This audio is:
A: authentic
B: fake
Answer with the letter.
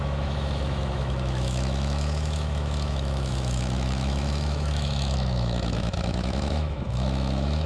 B